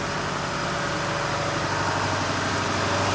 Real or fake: real